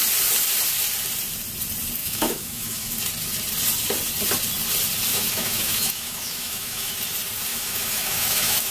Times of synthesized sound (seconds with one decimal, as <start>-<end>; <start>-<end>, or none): 2.0-3.0; 5.1-7.0; 7.5-8.7